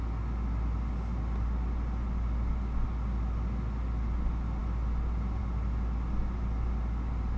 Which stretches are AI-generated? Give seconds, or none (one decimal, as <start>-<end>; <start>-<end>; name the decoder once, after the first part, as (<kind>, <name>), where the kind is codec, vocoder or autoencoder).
none

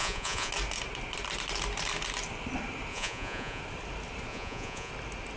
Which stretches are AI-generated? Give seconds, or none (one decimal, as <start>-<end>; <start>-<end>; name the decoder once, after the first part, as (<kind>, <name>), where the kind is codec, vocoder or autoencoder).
0.0-0.5 (vocoder, Vocos); 2.9-3.6; 4.3-4.9

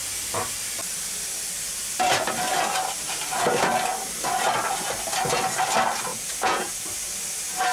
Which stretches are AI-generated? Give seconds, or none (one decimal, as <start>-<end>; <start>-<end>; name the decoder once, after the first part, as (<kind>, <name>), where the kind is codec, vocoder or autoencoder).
6.1-6.7 (vocoder, Vocos)

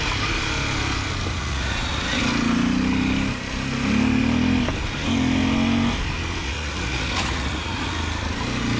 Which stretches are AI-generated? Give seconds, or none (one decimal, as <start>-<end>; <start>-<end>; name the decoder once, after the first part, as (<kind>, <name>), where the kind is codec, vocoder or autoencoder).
1.4-2.2 (vocoder, Vocos); 6.4-7.9